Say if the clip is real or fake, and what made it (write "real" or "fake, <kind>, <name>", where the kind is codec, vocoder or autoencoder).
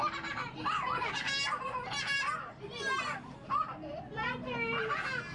real